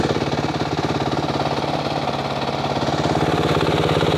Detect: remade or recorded recorded